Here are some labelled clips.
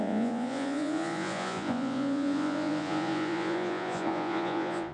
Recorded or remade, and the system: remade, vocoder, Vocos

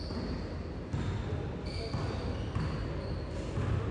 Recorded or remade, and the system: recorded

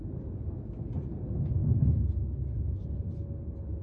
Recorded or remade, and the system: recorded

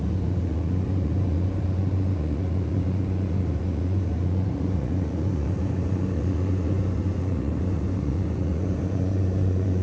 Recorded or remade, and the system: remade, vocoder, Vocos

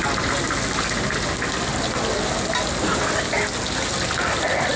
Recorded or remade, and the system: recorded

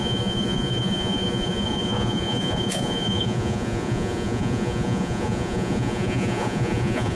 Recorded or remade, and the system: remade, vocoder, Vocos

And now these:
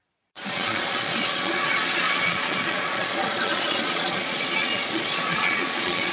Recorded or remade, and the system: remade, vocoder, Vocos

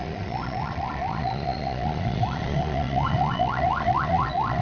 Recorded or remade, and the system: remade, vocoder, Vocos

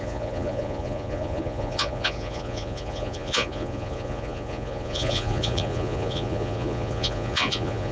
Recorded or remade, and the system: remade, vocoder, Vocos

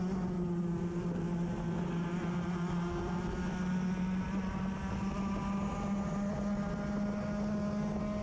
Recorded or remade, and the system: recorded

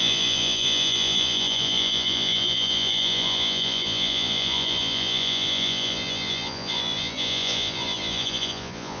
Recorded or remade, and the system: remade, vocoder, Vocos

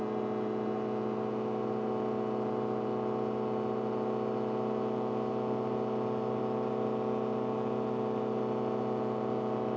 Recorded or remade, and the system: recorded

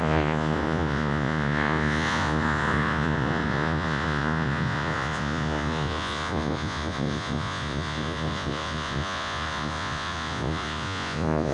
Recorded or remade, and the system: remade, vocoder, Vocos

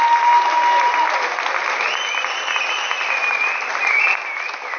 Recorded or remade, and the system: recorded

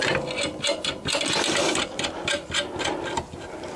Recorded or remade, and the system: recorded